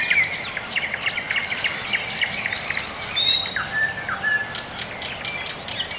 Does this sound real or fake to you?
real